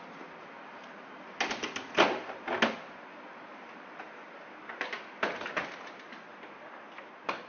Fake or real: real